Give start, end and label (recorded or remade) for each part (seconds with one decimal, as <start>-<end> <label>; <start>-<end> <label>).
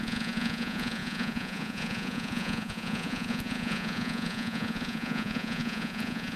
0.0-6.4 remade